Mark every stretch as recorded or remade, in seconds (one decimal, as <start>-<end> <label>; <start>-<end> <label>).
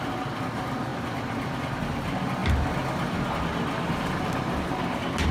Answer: 0.0-5.3 recorded